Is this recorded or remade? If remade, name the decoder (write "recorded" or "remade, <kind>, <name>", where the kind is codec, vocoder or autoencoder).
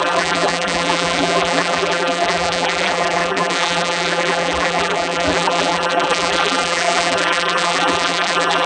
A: remade, vocoder, BigVGAN v2